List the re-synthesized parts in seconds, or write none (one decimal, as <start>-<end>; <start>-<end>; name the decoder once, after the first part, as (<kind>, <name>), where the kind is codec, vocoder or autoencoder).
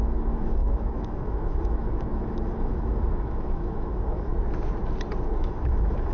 0.0-4.3 (autoencoder, DAC-VAE); 5.4-6.1